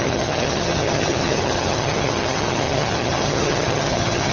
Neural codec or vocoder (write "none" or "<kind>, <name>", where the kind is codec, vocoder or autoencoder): vocoder, HiFi-GAN